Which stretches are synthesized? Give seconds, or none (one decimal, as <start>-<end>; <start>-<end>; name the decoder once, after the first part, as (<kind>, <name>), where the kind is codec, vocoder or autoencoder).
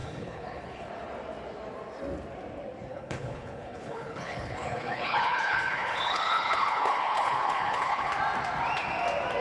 0.0-0.9 (codec, HILCodec); 2.9-8.1